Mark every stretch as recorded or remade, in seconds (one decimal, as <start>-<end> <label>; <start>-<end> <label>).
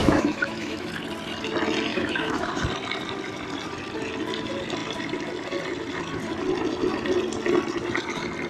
0.0-0.9 remade; 0.9-1.9 recorded; 1.9-2.5 remade; 2.5-8.5 recorded